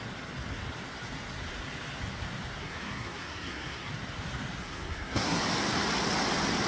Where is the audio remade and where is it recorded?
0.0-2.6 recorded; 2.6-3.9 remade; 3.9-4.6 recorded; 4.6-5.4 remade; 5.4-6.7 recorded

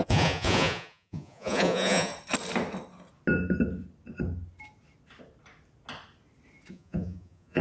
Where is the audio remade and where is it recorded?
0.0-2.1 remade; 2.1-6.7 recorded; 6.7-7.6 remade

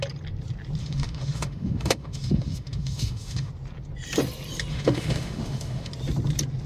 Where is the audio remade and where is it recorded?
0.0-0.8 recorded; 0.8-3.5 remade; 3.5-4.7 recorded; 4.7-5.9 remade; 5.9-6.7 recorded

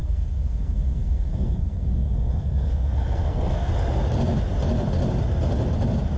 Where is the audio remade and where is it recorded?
0.0-3.7 remade; 3.7-6.2 recorded

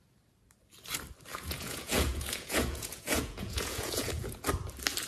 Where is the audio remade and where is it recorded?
0.0-1.3 recorded; 1.3-4.4 remade; 4.4-5.1 recorded